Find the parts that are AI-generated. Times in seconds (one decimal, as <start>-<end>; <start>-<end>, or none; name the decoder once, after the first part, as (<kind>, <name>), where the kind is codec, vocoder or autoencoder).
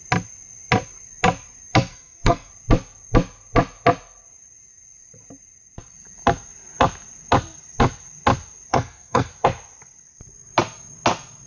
1.9-2.5 (codec, SNAC); 8.7-9.3